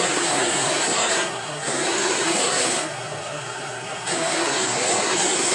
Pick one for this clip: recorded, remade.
remade